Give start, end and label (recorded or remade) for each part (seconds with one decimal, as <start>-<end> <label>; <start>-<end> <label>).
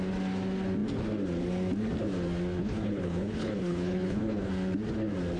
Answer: 0.0-2.6 recorded; 2.6-4.5 remade; 4.5-5.4 recorded